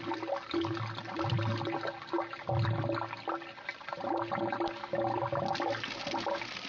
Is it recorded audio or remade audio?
recorded